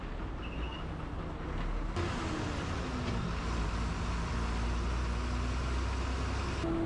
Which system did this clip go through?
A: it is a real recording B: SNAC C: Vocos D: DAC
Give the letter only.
A